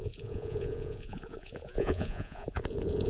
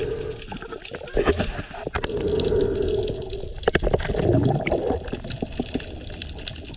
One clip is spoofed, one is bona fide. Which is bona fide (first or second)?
second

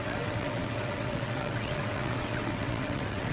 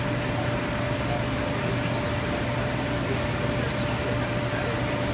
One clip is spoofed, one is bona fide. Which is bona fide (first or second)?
second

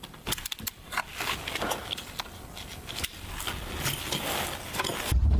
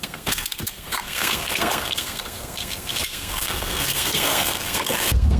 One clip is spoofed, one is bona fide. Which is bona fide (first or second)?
first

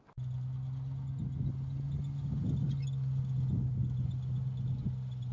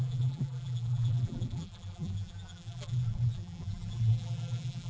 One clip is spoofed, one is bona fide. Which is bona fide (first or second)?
first